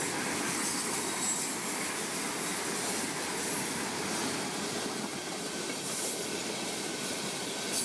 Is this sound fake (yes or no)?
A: no